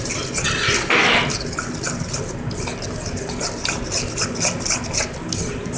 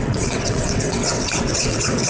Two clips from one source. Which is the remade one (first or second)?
second